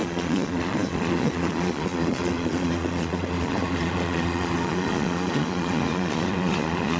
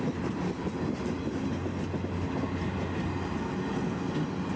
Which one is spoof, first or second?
first